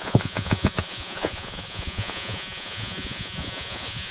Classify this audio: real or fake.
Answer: fake